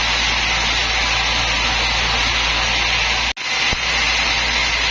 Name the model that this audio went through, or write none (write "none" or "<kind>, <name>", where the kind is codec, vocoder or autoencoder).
none